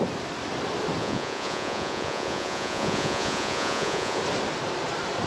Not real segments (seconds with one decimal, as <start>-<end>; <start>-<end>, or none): 1.0-4.2